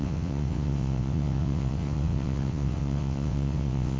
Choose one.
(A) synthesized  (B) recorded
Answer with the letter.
A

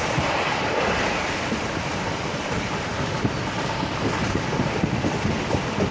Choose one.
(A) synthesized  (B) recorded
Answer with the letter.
B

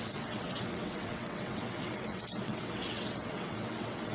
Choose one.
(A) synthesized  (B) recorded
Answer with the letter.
A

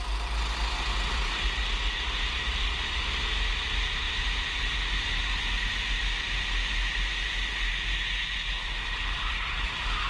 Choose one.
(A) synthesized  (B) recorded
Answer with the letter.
B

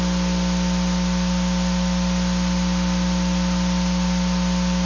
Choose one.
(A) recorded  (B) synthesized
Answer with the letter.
A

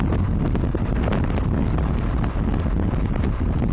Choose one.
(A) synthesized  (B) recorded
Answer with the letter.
B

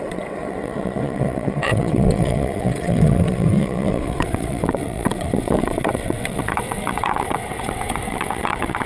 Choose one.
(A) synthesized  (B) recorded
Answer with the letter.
A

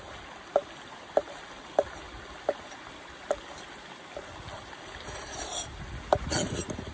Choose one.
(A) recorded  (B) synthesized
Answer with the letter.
A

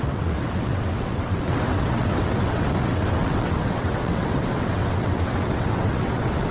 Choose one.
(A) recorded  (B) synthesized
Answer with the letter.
B